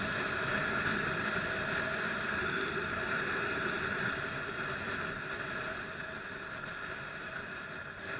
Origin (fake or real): real